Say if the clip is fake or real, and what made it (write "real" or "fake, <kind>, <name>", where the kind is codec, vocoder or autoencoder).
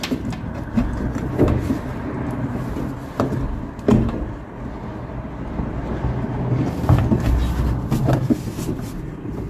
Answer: real